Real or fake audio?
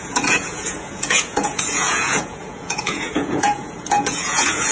fake